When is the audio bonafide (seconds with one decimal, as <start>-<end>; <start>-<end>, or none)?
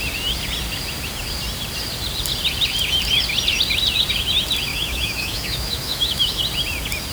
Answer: 0.0-4.7; 6.4-7.1